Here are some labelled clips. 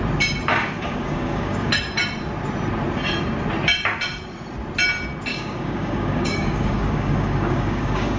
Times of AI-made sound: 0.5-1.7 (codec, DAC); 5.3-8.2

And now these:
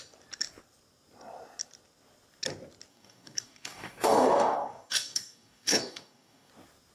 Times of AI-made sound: 2.9-6.5 (codec, DAC)

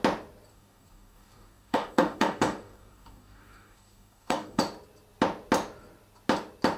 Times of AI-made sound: 0.5-4.6 (codec, DAC)

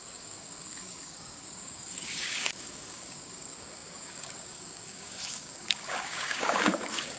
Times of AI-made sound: 0.0-7.2 (codec, DAC)

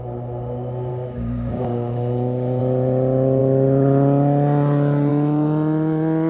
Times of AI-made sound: 0.9-2.6 (codec, DAC)

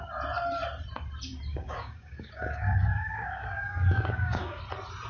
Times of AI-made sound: 1.5-4.6 (codec, DAC)

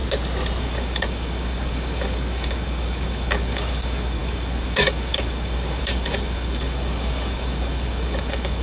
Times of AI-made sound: 0.6-8.6 (codec, DAC)

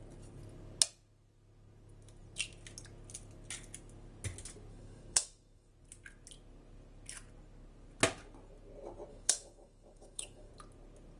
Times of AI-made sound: 4.7-5.7 (codec, DAC); 9.1-10.5